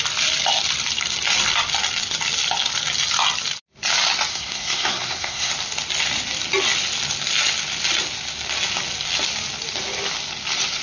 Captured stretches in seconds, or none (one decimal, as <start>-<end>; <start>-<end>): 0.0-4.3; 5.5-10.8